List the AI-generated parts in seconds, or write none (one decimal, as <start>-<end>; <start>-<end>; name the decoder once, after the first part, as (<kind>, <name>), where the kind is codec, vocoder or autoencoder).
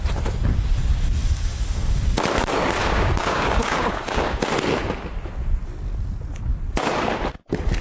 2.8-4.4 (codec, DAC)